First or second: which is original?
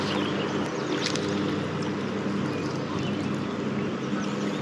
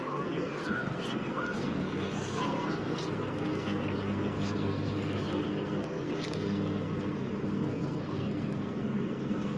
first